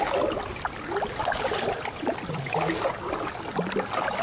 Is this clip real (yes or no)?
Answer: yes